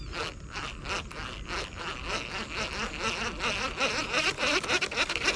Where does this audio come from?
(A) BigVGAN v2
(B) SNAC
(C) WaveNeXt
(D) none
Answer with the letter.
A